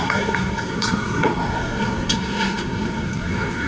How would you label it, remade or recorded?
remade